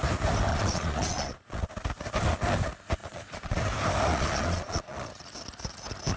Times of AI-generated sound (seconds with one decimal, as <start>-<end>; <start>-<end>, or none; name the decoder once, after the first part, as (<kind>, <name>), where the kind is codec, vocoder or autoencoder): 0.5-1.7 (vocoder, Vocos); 3.0-3.6; 4.1-5.1